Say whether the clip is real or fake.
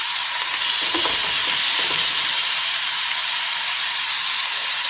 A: fake